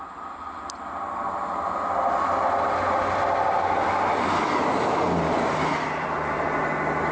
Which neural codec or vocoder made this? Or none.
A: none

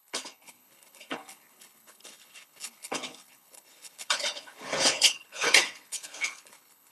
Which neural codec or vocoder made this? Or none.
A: codec, HILCodec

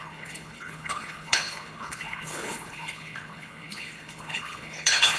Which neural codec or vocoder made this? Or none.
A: codec, HILCodec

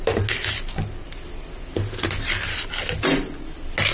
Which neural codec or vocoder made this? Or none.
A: none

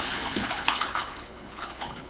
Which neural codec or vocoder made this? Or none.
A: codec, HILCodec